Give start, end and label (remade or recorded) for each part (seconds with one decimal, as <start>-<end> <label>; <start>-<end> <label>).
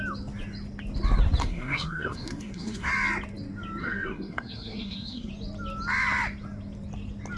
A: 0.0-1.4 recorded; 1.4-2.9 remade; 2.9-3.8 recorded; 3.8-5.3 remade; 5.3-7.4 recorded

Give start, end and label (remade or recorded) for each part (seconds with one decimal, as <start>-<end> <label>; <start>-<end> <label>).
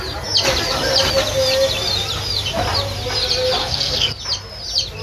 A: 0.0-3.6 recorded; 3.6-4.2 remade; 4.2-5.0 recorded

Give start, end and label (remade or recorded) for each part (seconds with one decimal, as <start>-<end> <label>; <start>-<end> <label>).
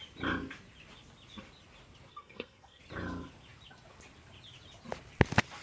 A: 0.0-2.1 recorded; 2.1-2.8 remade; 2.8-5.6 recorded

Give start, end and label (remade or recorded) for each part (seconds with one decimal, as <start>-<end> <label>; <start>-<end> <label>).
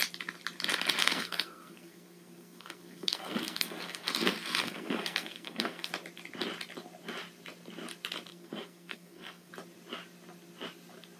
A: 0.0-1.0 recorded; 1.0-5.9 remade; 5.9-8.3 recorded; 8.3-9.5 remade; 9.5-11.2 recorded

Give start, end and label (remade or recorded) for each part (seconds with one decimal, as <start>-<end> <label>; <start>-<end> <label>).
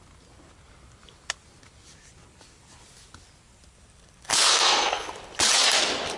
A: 0.0-4.3 recorded; 4.3-5.1 remade; 5.1-6.2 recorded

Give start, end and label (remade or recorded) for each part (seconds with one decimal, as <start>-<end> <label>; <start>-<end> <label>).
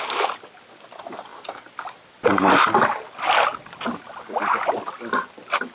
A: 0.0-5.7 recorded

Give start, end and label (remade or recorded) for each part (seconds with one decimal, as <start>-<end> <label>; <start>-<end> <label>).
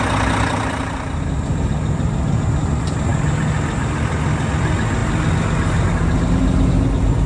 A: 0.0-7.3 recorded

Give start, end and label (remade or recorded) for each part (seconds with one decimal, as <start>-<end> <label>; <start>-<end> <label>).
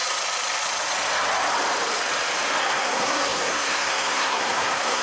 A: 0.0-2.6 recorded; 2.6-5.0 remade